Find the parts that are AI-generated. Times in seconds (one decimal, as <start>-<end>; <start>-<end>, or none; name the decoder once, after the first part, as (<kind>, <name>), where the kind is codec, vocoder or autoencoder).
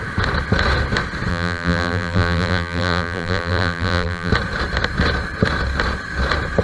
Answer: 1.3-4.3 (vocoder, BigVGAN v2)